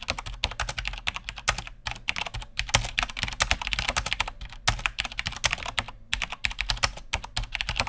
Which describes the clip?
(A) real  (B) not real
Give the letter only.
A